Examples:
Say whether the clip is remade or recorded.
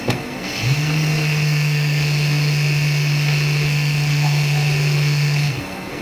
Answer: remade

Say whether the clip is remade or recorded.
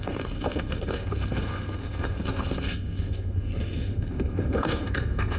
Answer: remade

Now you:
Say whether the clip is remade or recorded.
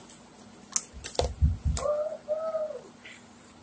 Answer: recorded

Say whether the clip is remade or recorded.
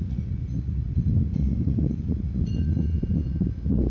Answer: remade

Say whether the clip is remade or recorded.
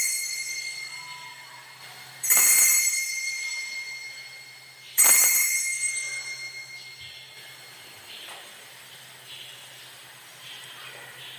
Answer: remade